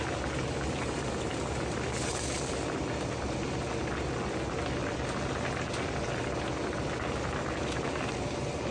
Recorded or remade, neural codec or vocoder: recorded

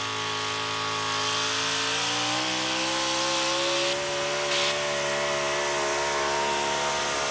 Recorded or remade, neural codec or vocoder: recorded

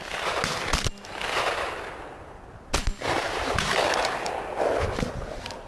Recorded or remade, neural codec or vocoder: recorded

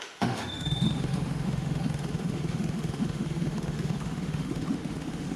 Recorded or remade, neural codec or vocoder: remade, autoencoder, DAC-VAE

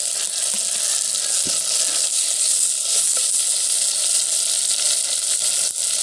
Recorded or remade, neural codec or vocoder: recorded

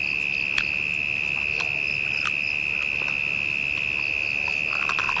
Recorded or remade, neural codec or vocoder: recorded